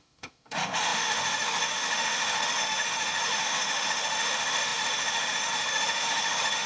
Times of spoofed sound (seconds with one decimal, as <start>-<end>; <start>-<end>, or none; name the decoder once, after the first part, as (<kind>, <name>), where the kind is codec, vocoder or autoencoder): 0.0-6.7 (autoencoder, DAC-VAE)